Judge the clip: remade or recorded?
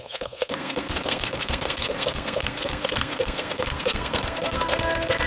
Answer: remade